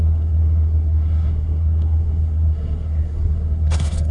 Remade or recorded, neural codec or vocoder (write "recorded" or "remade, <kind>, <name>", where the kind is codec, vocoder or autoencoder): remade, codec, SNAC